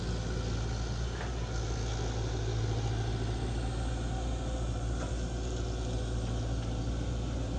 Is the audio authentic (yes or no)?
yes